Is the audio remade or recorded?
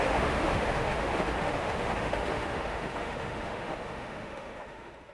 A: remade